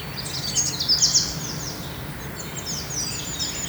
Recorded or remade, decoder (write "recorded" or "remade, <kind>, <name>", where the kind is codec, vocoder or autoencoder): recorded